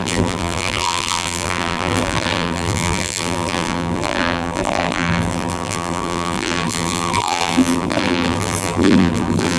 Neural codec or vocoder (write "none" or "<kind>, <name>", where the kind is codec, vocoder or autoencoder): vocoder, BigVGAN v2